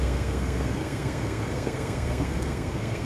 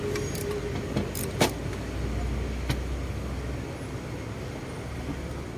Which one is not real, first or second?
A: first